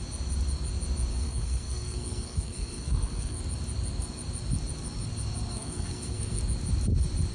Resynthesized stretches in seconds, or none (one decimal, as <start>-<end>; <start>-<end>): 1.1-3.4; 5.5-6.4